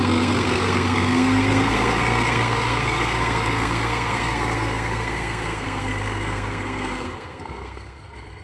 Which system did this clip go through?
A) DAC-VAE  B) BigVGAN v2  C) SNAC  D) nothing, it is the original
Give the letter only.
C